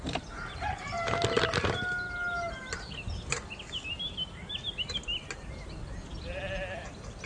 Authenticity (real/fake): real